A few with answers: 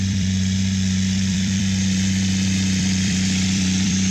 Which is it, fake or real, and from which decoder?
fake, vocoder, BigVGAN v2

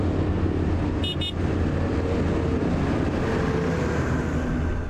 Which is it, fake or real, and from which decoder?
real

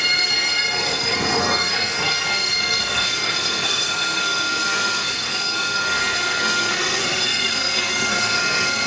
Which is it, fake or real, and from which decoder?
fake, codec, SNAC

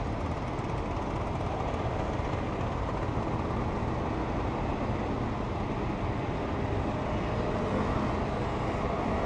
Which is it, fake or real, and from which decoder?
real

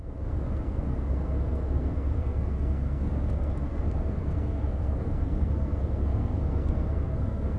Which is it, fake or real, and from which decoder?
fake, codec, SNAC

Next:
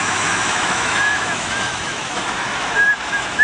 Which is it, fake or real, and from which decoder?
fake, autoencoder, DAC-VAE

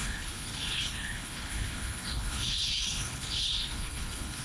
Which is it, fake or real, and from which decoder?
fake, codec, HILCodec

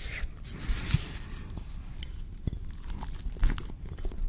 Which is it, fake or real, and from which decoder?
real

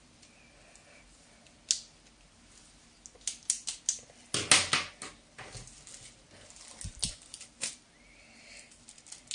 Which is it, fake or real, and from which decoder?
real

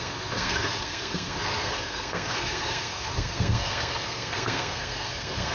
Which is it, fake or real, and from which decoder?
fake, codec, SNAC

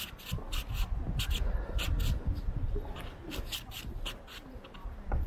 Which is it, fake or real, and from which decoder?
real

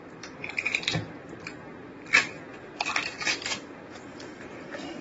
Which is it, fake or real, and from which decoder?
real